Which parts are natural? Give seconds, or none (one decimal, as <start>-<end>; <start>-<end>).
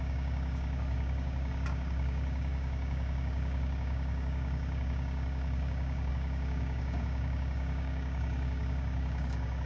none